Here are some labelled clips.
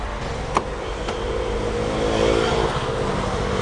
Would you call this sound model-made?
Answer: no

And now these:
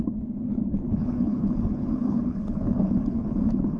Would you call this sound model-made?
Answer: yes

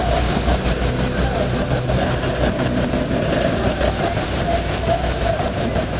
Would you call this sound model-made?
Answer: no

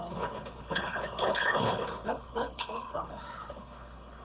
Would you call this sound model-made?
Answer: yes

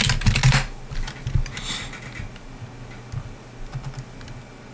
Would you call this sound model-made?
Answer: no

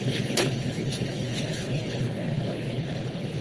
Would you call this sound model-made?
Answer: yes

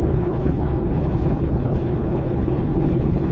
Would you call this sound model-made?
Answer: yes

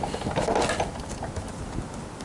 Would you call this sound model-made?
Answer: no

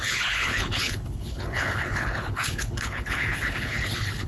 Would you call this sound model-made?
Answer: yes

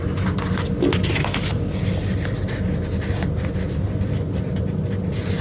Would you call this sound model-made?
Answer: no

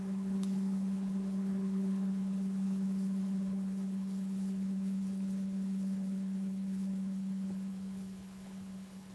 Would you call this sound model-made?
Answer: yes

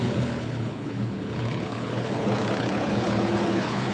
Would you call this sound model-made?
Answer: yes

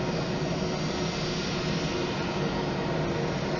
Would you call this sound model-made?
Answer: no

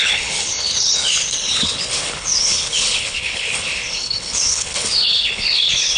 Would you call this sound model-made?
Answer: yes